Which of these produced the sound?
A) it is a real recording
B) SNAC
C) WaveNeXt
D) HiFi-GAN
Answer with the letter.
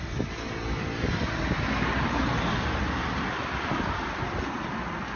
A